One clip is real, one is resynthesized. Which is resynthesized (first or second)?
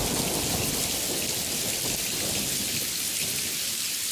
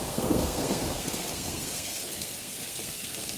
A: second